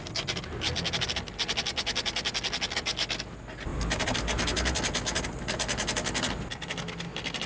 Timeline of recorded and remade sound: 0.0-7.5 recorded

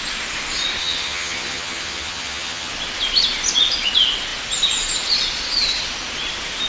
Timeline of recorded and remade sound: 0.0-0.8 recorded; 0.8-2.7 remade; 2.7-6.7 recorded

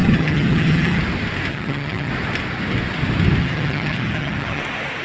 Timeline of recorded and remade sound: 0.0-1.0 remade; 1.0-1.5 recorded; 1.5-2.1 remade; 2.1-3.4 recorded; 3.4-4.6 remade; 4.6-5.0 recorded

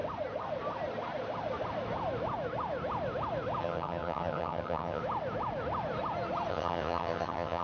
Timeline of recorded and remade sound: 0.0-3.6 recorded; 3.6-5.0 remade; 5.0-6.5 recorded; 6.5-7.6 remade

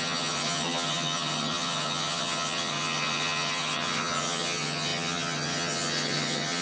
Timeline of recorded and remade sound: 0.0-6.6 remade

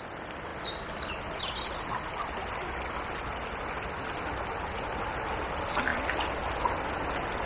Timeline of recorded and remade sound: 0.0-7.5 recorded

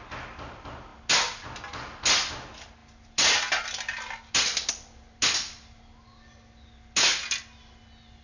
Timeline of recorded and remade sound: 0.0-8.2 recorded